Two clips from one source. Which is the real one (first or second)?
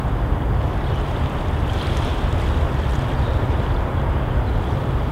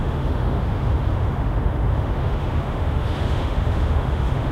first